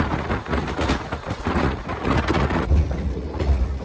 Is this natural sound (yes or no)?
no